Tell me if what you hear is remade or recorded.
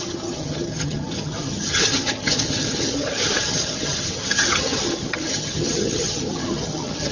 remade